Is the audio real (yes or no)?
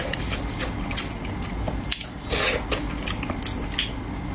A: yes